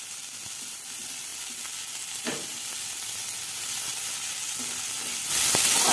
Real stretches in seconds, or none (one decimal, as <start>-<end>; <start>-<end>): 0.0-5.9

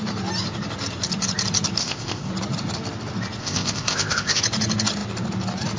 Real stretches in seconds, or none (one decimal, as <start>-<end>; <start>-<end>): 0.0-1.8; 2.3-3.4; 4.4-5.8